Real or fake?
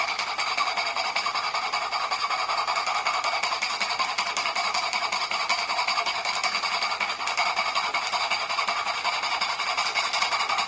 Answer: real